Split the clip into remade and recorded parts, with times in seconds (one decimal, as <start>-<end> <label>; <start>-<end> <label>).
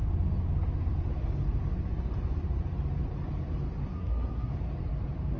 0.0-3.9 recorded; 3.9-4.5 remade; 4.5-5.4 recorded